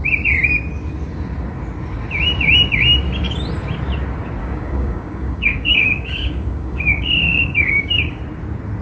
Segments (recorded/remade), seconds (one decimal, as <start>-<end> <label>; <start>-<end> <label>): 0.0-4.4 recorded; 4.4-8.2 remade; 8.2-8.8 recorded

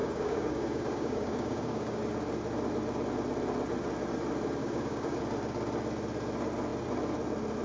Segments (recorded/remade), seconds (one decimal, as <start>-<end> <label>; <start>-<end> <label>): 0.0-2.0 remade; 2.0-4.6 recorded; 4.6-5.2 remade; 5.2-7.6 recorded